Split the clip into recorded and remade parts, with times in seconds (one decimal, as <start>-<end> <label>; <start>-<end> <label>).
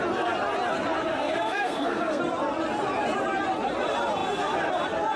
0.0-1.1 recorded; 1.1-2.2 remade; 2.2-5.2 recorded